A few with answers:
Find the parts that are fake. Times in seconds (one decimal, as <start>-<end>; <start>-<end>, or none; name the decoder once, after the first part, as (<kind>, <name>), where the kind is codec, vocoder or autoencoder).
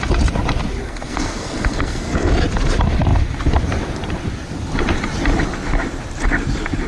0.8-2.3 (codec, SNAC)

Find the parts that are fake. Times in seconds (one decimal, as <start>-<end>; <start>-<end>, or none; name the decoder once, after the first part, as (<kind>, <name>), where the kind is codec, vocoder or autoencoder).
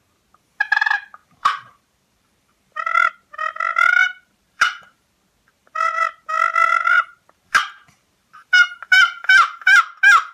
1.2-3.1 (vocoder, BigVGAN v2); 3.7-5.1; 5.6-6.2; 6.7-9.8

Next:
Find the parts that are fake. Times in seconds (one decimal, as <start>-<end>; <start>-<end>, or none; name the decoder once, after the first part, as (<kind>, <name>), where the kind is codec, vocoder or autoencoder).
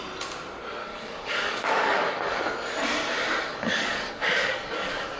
0.8-2.5 (codec, DAC); 3.5-5.2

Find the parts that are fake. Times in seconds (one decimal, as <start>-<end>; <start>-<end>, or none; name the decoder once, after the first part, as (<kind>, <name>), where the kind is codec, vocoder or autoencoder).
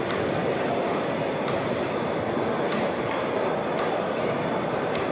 0.0-0.4 (vocoder, BigVGAN v2); 2.7-5.1